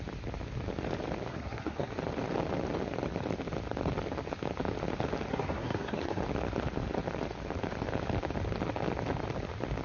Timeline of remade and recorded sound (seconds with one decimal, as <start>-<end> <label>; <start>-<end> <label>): 0.0-1.3 recorded; 1.3-1.9 remade; 1.9-5.3 recorded; 5.3-6.2 remade; 6.2-9.8 recorded